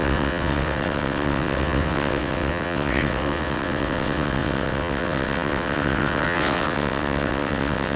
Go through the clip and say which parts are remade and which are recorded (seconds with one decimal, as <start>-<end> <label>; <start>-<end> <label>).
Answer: 0.0-8.0 remade